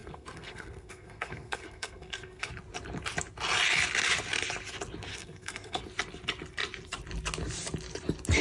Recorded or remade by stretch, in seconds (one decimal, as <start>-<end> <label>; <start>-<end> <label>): 0.0-2.5 remade; 2.5-5.1 recorded; 5.1-5.8 remade; 5.8-8.4 recorded

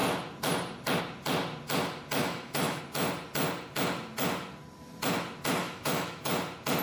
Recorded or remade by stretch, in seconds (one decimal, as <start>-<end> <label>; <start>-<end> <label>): 0.0-2.2 recorded; 2.2-2.8 remade; 2.8-5.6 recorded; 5.6-6.3 remade; 6.3-6.8 recorded

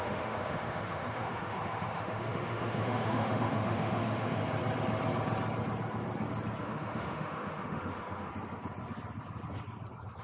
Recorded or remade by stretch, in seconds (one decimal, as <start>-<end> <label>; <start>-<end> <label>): 0.0-4.4 remade; 4.4-6.6 recorded; 6.6-8.3 remade; 8.3-10.2 recorded

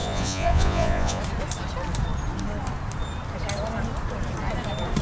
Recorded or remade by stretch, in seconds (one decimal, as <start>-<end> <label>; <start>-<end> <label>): 0.0-1.2 remade; 1.2-5.0 recorded

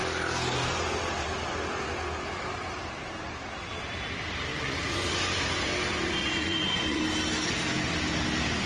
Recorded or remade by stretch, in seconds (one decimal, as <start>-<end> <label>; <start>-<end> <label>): 0.0-4.5 recorded; 4.5-5.2 remade; 5.2-6.2 recorded; 6.2-7.0 remade; 7.0-8.7 recorded

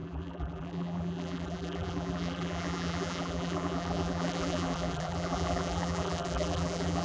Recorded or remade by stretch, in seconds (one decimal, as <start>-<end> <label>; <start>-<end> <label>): 0.0-7.0 remade